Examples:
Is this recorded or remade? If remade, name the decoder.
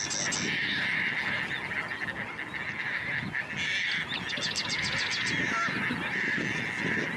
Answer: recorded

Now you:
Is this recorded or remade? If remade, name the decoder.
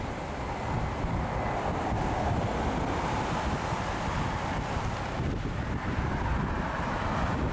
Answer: recorded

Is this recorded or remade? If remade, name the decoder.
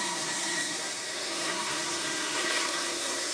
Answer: remade, codec, SNAC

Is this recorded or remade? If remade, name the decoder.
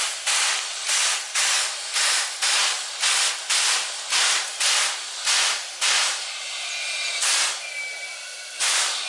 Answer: recorded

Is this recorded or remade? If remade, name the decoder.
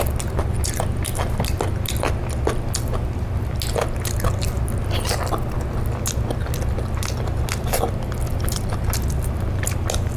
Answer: recorded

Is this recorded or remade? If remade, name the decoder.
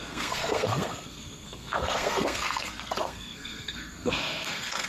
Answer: remade, codec, SNAC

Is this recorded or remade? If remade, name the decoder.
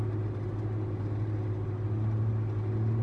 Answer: recorded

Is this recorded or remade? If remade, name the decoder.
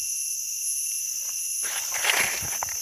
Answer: recorded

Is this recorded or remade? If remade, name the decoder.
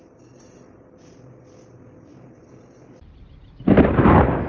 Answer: recorded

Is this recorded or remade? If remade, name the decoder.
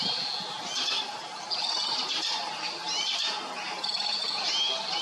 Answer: recorded